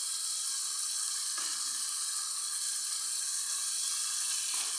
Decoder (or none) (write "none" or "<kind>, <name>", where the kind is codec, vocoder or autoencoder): none